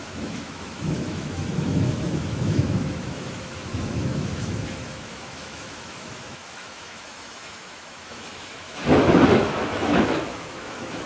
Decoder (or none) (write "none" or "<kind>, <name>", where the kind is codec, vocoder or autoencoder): autoencoder, DAC-VAE